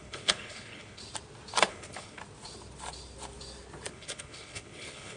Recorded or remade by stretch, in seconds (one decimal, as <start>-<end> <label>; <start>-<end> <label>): 0.0-1.0 remade; 1.0-1.7 recorded; 1.7-2.2 remade; 2.2-3.9 recorded; 3.9-5.2 remade